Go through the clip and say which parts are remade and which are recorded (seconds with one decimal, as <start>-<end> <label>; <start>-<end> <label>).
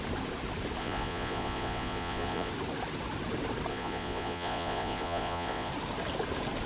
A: 0.0-0.8 recorded; 0.8-2.5 remade; 2.5-3.7 recorded; 3.7-5.7 remade; 5.7-6.7 recorded